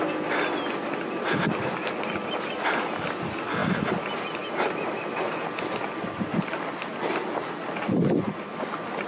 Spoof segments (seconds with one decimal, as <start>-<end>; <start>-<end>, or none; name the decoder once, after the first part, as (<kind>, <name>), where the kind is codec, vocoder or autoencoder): none